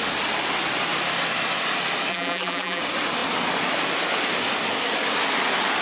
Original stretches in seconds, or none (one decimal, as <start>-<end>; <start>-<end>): 0.0-2.1; 2.8-5.8